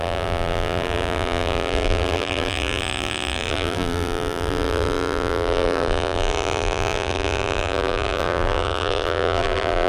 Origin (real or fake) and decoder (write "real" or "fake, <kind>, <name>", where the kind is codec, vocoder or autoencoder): fake, vocoder, BigVGAN v2